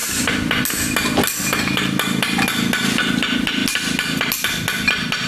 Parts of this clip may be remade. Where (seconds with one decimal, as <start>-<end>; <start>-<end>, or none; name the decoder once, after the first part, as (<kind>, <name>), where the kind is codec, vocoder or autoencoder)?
none